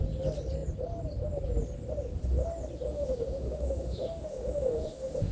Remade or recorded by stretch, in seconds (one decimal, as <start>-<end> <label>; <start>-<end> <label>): 0.0-2.9 recorded; 2.9-5.3 remade